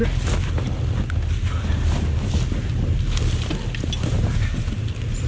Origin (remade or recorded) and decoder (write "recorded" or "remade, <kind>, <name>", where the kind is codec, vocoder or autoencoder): recorded